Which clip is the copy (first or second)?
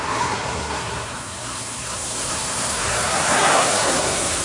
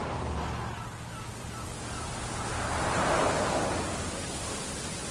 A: first